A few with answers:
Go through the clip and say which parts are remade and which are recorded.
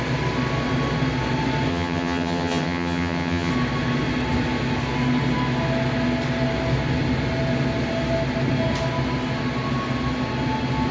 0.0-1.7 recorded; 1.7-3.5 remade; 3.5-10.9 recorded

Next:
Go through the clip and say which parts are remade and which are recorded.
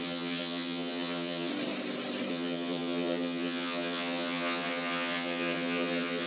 0.0-1.5 remade; 1.5-2.3 recorded; 2.3-6.3 remade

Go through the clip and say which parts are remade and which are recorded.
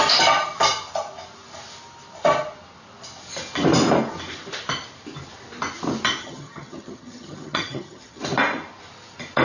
0.0-6.2 recorded; 6.2-8.2 remade; 8.2-9.4 recorded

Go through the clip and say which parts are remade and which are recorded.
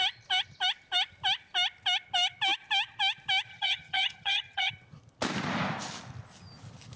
0.0-3.5 recorded; 3.5-4.7 remade; 4.7-7.0 recorded